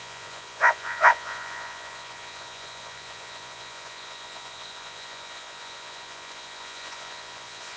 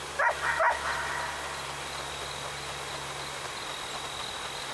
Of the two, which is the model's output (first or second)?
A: first